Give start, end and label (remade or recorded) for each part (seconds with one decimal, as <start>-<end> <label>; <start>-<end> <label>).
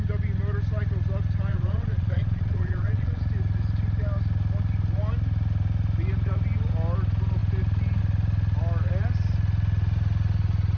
0.0-1.5 recorded; 1.5-3.2 remade; 3.2-10.8 recorded